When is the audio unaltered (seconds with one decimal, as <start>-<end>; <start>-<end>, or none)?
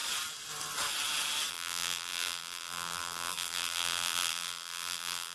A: 0.0-1.5